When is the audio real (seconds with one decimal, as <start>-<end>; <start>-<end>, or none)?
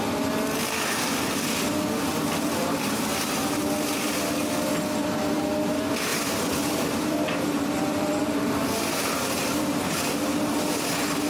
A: 0.0-2.6; 3.7-6.1; 10.0-11.3